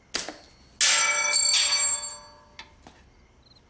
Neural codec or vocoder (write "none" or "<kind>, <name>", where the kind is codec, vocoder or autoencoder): none